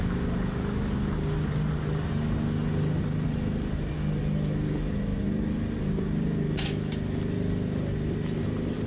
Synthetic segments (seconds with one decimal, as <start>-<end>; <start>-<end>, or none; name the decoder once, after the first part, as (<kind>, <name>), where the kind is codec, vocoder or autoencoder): none